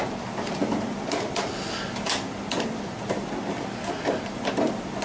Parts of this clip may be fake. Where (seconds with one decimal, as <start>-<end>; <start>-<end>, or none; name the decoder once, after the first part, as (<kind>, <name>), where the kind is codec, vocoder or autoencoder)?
none